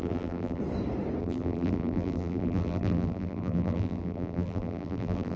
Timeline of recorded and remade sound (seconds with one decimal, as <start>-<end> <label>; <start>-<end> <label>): 0.0-0.6 remade; 0.6-1.2 recorded; 1.2-5.4 remade